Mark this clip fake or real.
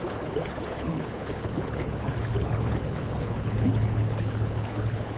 fake